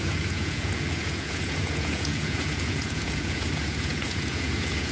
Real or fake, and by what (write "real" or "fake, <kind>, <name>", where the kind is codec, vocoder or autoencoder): fake, vocoder, Vocos